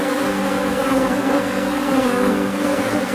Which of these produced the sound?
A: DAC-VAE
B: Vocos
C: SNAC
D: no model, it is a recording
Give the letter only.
C